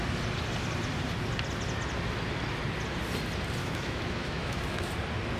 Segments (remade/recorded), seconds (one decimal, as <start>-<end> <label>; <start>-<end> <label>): 0.0-3.6 recorded; 3.6-4.9 remade; 4.9-5.4 recorded